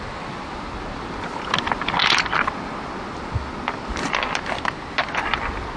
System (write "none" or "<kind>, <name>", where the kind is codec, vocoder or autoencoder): none